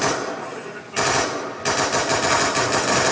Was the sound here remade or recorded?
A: recorded